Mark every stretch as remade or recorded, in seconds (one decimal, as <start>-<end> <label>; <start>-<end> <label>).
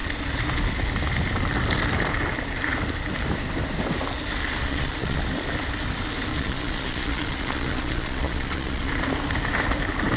0.0-4.6 recorded; 4.6-5.2 remade; 5.2-6.3 recorded; 6.3-8.9 remade; 8.9-10.2 recorded